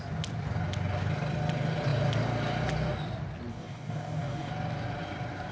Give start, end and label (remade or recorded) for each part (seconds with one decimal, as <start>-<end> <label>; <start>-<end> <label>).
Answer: 0.0-3.5 recorded; 3.5-4.5 remade; 4.5-5.5 recorded